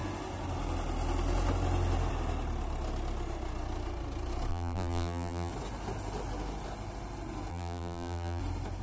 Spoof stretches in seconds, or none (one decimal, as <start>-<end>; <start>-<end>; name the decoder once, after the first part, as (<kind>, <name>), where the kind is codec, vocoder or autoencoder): 4.5-5.5 (vocoder, BigVGAN v2); 7.5-8.4